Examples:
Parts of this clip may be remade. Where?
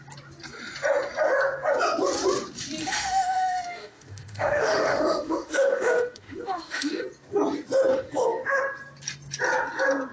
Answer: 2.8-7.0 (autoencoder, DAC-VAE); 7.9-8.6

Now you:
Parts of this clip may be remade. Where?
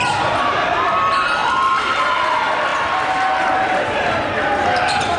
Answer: 0.0-2.7 (vocoder, BigVGAN v2); 3.4-5.2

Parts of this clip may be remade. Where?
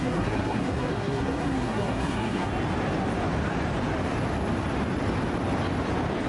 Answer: 0.0-2.5 (codec, SNAC)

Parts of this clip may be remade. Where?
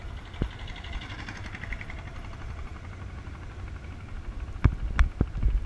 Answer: none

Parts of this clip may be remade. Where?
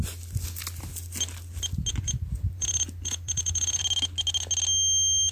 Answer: 1.9-3.8 (vocoder, BigVGAN v2)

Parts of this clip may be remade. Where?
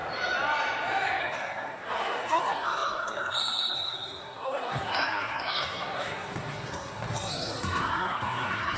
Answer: 1.2-8.8 (codec, SNAC)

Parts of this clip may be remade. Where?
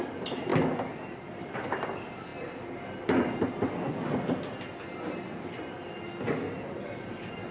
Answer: 0.0-0.5 (vocoder, BigVGAN v2); 1.2-2.3; 6.6-7.5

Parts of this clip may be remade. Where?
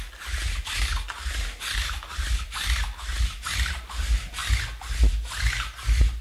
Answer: none